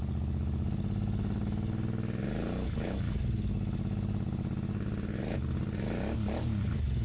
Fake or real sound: real